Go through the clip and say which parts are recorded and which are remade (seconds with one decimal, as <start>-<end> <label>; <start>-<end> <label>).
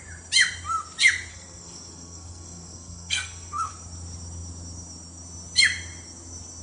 0.0-1.3 recorded; 1.3-3.7 remade; 3.7-6.6 recorded